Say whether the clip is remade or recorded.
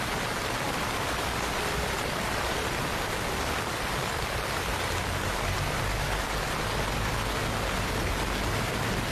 recorded